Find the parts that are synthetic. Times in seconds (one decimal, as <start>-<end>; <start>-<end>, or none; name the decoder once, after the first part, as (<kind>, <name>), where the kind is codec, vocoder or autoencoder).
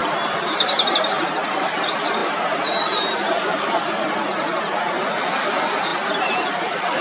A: none